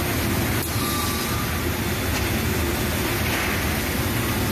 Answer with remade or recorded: recorded